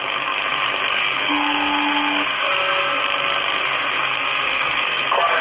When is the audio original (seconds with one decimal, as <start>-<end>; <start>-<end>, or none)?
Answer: 0.0-0.9; 3.0-3.6